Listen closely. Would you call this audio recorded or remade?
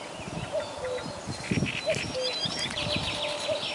recorded